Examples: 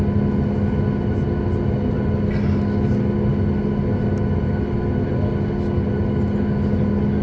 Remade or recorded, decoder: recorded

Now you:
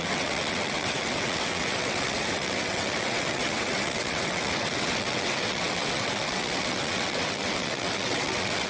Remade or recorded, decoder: remade, vocoder, WaveNeXt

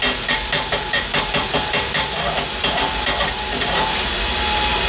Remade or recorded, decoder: recorded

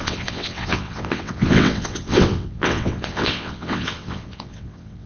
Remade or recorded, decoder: remade, vocoder, WaveNeXt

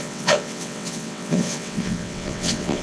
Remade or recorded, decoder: remade, vocoder, WaveNeXt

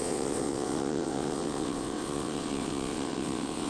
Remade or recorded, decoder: remade, vocoder, WaveNeXt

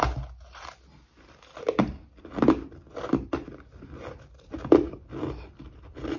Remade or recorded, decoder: recorded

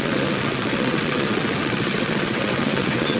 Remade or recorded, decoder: remade, vocoder, WaveNeXt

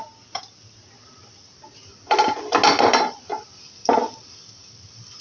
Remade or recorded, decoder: recorded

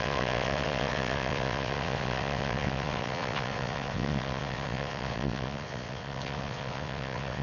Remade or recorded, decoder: remade, vocoder, WaveNeXt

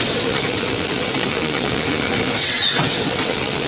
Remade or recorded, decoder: remade, vocoder, WaveNeXt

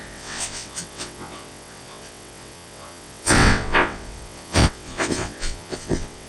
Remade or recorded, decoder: remade, vocoder, WaveNeXt